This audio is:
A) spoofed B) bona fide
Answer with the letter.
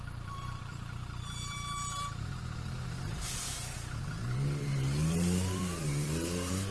A